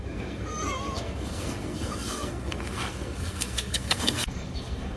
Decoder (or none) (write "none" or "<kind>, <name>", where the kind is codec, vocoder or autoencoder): codec, SNAC